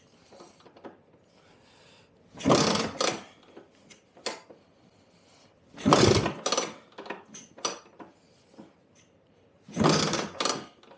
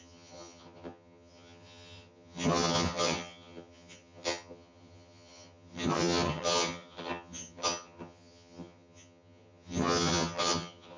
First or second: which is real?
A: first